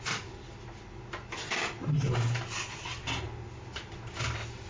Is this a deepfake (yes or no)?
no